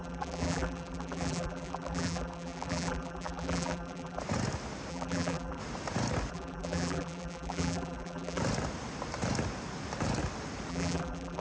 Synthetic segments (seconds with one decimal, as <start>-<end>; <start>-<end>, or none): 0.0-4.2; 4.9-5.6; 6.3-8.4; 10.7-11.4